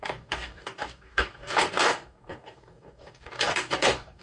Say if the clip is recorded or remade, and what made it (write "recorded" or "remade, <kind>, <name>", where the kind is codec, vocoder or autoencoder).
remade, codec, DAC